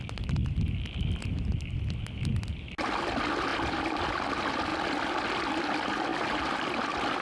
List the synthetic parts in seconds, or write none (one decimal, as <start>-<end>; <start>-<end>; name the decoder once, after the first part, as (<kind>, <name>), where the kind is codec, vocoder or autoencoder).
none